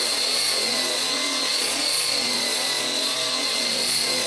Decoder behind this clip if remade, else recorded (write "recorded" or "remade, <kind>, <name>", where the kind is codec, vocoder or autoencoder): remade, vocoder, Vocos